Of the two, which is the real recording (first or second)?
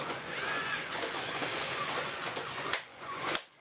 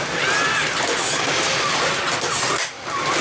second